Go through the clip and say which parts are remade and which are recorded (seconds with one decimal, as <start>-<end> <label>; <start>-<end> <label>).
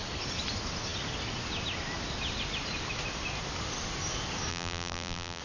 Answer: 0.0-4.5 recorded; 4.5-5.4 remade